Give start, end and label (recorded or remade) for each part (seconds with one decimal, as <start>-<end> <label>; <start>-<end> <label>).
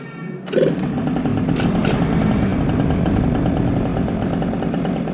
0.0-1.3 recorded; 1.3-2.0 remade; 2.0-2.5 recorded; 2.5-3.2 remade; 3.2-5.1 recorded